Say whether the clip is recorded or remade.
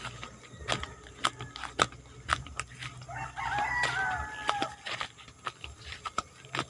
recorded